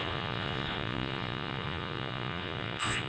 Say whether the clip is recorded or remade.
remade